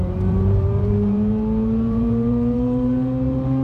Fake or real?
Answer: fake